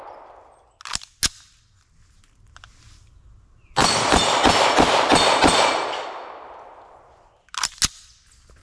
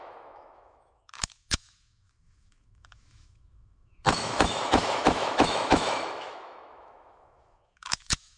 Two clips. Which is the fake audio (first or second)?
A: second